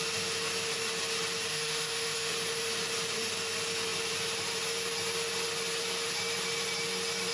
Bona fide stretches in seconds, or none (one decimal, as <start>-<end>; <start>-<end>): 0.0-1.5; 2.3-7.3